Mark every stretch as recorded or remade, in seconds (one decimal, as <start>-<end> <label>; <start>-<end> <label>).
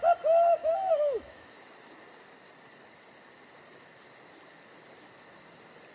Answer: 0.0-0.6 recorded; 0.6-1.5 remade; 1.5-5.9 recorded